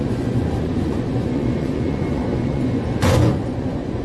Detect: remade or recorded remade